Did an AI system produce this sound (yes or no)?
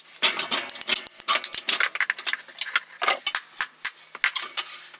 no